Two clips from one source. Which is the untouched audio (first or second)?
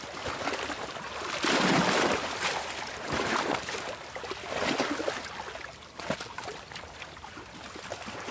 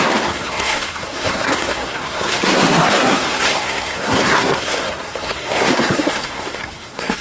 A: first